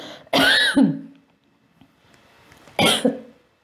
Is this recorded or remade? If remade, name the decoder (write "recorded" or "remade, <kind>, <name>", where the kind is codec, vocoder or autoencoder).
recorded